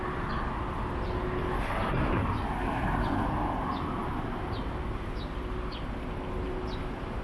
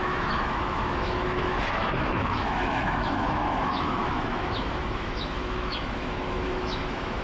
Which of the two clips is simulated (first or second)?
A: second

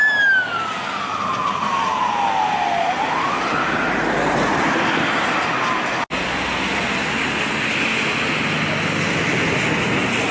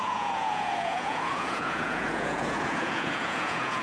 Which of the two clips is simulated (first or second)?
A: second